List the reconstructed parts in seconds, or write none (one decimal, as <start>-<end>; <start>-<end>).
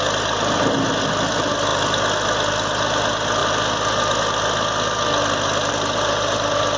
none